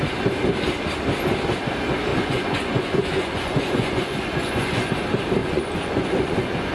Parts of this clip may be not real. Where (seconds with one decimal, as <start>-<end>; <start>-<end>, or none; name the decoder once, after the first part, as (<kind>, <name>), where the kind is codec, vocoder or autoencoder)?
2.1-4.9 (vocoder, Vocos); 5.4-6.7